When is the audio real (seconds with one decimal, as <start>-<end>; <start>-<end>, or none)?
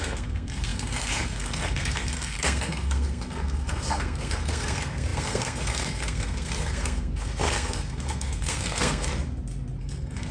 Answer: 9.1-9.8